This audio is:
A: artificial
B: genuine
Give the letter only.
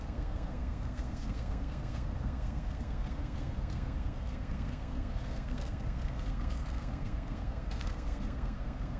A